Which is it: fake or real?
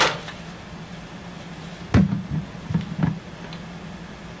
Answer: real